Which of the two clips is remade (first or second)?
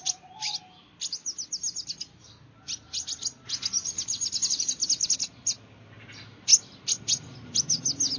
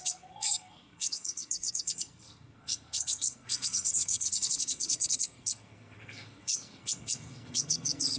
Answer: second